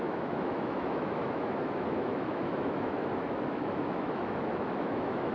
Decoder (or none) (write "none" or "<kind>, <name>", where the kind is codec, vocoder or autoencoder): autoencoder, DAC-VAE